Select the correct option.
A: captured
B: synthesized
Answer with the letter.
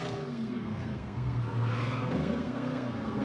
B